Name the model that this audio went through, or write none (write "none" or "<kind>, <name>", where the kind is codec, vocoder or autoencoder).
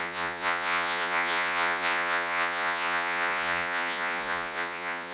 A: vocoder, Vocos